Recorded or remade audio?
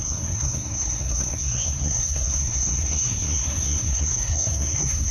remade